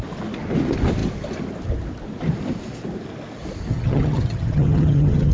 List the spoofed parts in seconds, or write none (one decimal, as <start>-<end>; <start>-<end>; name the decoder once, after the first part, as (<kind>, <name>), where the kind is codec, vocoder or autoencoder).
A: 3.7-5.3 (vocoder, HiFi-GAN)